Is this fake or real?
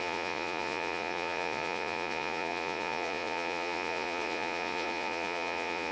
fake